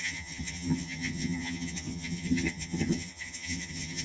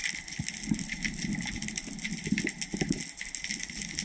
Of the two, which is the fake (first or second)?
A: first